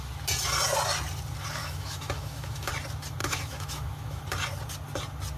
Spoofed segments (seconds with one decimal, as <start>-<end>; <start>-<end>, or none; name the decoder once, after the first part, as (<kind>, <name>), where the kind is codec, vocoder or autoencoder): 1.6-2.7 (autoencoder, DAC-VAE); 3.2-4.2